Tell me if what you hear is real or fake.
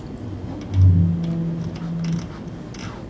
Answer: real